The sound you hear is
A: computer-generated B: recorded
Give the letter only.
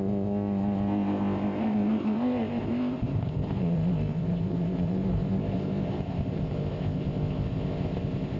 A